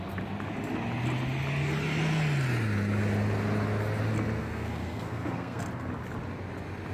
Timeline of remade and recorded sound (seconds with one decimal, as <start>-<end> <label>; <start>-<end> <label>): 0.0-4.4 recorded; 4.4-5.6 remade; 5.6-6.9 recorded